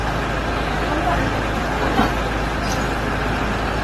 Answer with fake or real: real